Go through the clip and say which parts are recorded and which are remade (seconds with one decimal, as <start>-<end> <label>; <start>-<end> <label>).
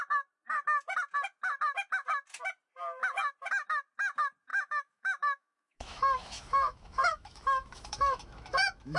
0.0-4.5 recorded; 4.5-9.0 remade